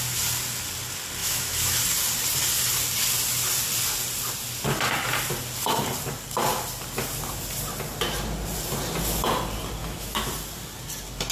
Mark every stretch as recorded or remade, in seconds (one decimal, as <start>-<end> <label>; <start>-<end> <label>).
0.0-1.2 recorded; 1.2-1.8 remade; 1.8-9.8 recorded; 9.8-10.3 remade; 10.3-11.3 recorded